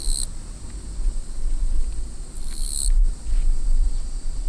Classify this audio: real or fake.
real